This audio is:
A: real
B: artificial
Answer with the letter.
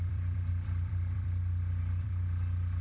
B